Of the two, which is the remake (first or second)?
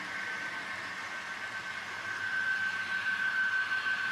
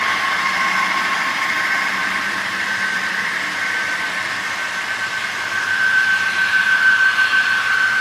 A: second